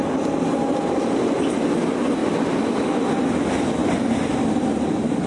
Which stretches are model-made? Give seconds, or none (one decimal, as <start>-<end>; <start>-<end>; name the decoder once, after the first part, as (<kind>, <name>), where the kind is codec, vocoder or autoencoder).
2.2-2.8 (vocoder, BigVGAN v2)